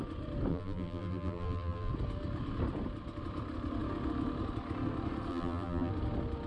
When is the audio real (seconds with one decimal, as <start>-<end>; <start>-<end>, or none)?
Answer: 0.0-0.5; 1.9-5.3; 5.9-6.5